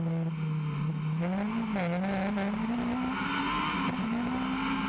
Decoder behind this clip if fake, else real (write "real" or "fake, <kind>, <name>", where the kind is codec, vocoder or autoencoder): real